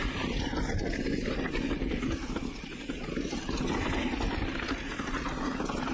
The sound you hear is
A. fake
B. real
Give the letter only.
B